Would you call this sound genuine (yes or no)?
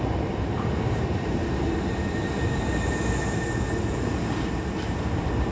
yes